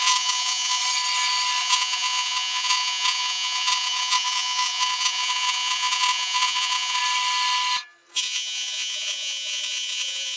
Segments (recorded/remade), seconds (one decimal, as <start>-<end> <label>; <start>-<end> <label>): 0.0-0.8 remade; 0.8-1.6 recorded; 1.6-7.0 remade; 7.0-8.1 recorded; 8.1-10.4 remade